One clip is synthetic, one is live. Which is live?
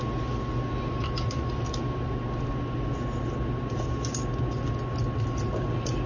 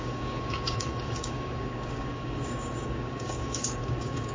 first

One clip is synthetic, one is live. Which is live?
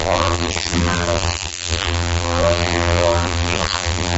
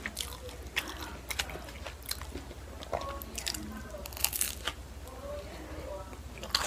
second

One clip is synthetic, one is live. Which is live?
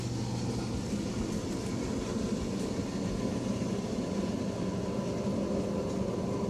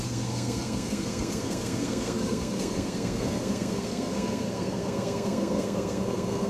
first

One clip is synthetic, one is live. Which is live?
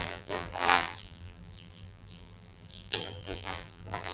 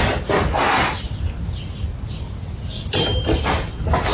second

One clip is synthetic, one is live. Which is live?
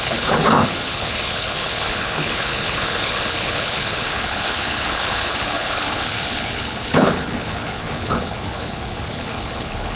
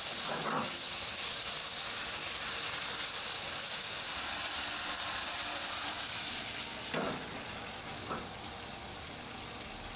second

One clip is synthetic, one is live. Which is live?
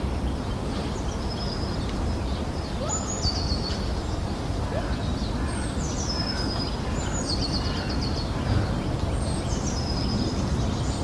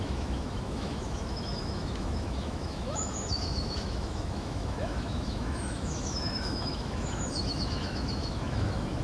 first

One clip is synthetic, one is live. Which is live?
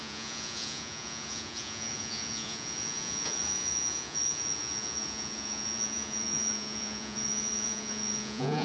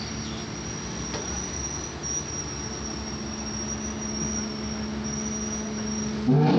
second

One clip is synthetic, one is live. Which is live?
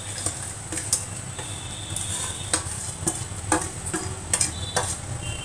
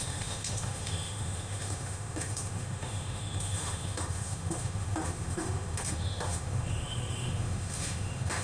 first